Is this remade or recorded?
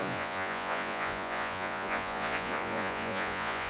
remade